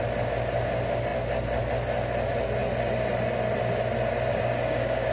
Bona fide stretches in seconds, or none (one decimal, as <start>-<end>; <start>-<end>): 0.0-4.3